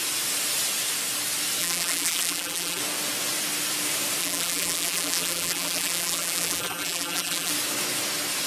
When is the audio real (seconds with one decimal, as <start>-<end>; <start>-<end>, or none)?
0.0-1.6; 2.8-4.2; 7.5-8.5